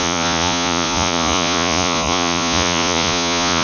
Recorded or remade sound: remade